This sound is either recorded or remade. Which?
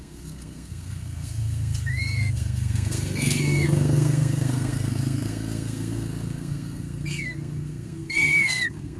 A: remade